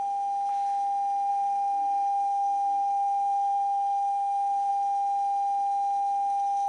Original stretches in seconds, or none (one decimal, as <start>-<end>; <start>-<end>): 0.0-1.3; 4.7-6.7

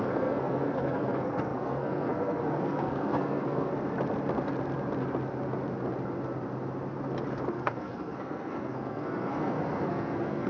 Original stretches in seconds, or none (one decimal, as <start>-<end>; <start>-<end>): 3.7-7.5

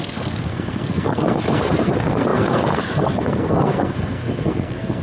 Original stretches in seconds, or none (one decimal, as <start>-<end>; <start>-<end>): none

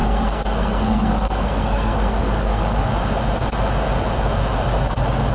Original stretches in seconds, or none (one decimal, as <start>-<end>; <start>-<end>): 2.9-5.3

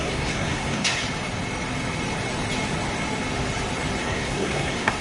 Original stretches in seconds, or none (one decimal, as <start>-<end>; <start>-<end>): 1.0-4.0

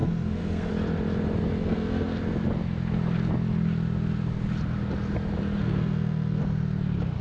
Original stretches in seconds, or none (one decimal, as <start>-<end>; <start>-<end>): 0.7-1.6; 2.2-5.6; 6.4-7.2

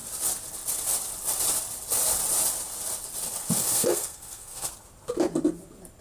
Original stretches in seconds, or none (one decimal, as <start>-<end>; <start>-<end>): 0.0-3.6; 4.7-6.0

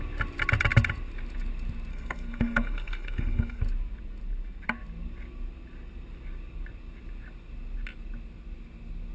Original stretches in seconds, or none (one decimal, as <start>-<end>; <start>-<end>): 0.0-1.9; 3.6-9.1